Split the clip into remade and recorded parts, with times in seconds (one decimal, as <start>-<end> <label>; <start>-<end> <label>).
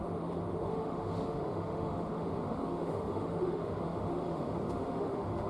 0.0-5.5 remade